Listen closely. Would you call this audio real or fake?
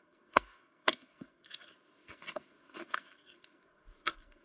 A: fake